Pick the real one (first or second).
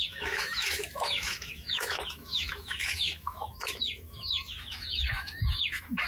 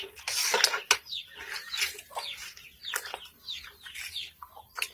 second